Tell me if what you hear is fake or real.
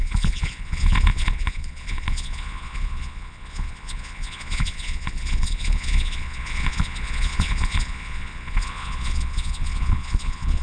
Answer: fake